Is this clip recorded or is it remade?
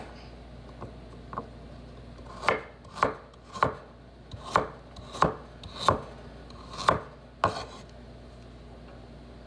recorded